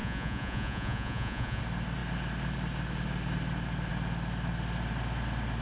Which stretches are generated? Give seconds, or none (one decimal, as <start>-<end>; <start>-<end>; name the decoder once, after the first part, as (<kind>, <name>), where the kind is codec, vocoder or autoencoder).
0.0-1.6 (vocoder, Vocos)